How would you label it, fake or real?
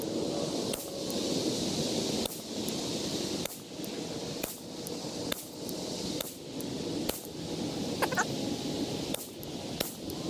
real